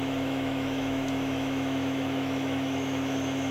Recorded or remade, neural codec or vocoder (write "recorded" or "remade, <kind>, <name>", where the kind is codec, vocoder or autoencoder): remade, autoencoder, DAC-VAE